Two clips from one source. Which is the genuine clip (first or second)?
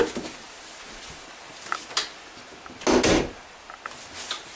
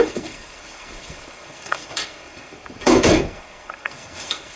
first